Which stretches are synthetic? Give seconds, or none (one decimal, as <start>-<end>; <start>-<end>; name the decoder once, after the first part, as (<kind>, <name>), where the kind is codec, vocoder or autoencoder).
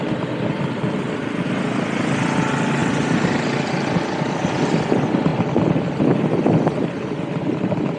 2.8-3.7 (vocoder, BigVGAN v2)